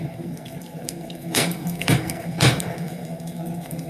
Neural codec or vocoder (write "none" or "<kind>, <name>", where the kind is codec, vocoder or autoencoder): codec, SNAC